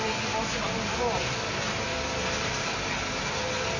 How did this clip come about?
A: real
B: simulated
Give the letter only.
A